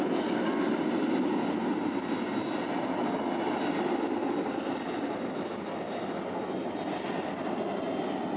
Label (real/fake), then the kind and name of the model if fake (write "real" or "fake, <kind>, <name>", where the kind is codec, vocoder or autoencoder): real